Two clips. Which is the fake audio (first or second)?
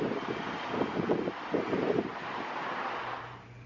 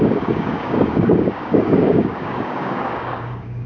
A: second